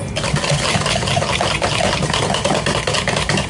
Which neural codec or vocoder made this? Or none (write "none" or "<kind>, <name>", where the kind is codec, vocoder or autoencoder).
vocoder, BigVGAN v2